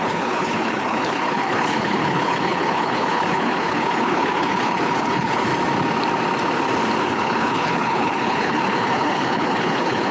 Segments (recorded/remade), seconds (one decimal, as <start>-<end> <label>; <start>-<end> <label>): 0.0-5.5 remade; 5.5-7.0 recorded; 7.0-10.1 remade